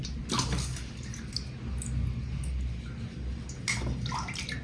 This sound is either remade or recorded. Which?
recorded